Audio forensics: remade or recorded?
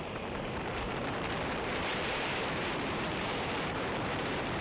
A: remade